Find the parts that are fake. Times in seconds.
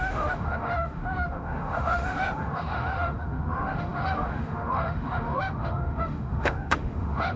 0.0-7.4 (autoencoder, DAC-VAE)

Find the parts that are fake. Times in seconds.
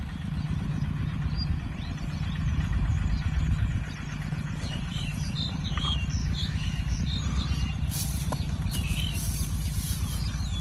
6.2-7.0 (autoencoder, DAC-VAE)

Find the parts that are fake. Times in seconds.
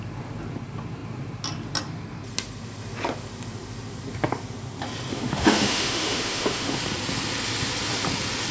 5.1-6.8 (autoencoder, DAC-VAE)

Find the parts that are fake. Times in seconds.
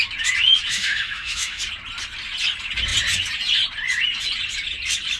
0.7-1.6 (autoencoder, DAC-VAE)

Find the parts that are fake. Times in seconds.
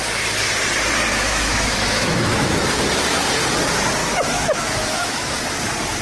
1.1-2.6 (autoencoder, DAC-VAE); 4.0-5.4